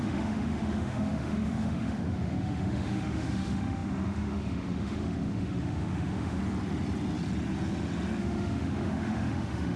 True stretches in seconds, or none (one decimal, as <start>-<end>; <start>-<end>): 6.4-8.2